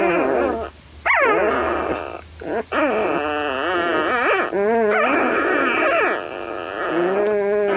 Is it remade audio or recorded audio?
recorded